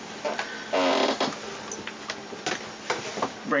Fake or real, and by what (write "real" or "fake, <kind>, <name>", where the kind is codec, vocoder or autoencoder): real